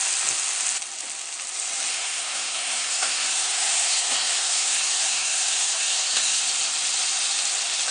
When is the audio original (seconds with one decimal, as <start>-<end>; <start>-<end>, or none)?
0.0-1.9; 6.4-7.9